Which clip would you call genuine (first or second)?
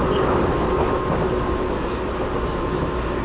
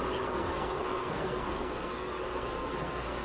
first